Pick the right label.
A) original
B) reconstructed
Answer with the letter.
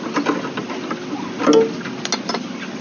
A